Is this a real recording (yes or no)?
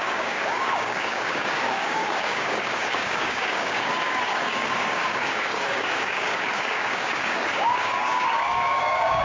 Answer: no